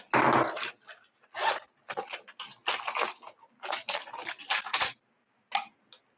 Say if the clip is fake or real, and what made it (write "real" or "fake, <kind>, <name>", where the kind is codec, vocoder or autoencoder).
real